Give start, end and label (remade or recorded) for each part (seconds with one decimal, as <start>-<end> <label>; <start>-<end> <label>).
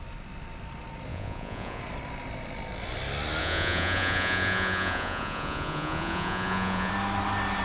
0.0-1.1 recorded; 1.1-1.8 remade; 1.8-3.4 recorded; 3.4-6.9 remade; 6.9-7.6 recorded